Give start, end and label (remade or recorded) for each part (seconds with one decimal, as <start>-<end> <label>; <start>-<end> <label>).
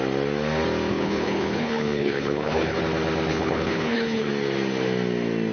0.0-0.9 recorded; 0.9-2.8 remade; 2.8-3.3 recorded; 3.3-4.3 remade; 4.3-5.5 recorded